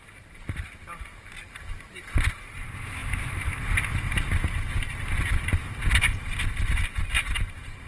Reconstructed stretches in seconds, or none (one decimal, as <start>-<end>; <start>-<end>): none